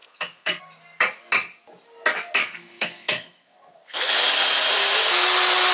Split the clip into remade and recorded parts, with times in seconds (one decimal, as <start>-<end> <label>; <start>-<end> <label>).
0.0-0.6 remade; 0.6-2.4 recorded; 2.4-4.1 remade; 4.1-5.7 recorded